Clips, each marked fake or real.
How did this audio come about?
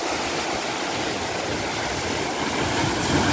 real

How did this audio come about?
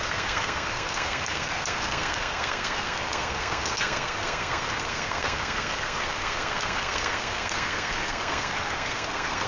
fake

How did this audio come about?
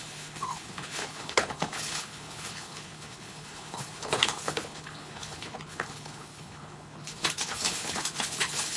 fake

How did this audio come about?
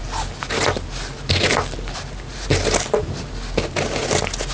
real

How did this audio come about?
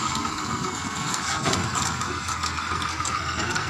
fake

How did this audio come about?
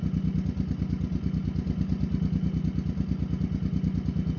real